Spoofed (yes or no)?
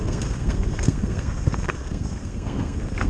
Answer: yes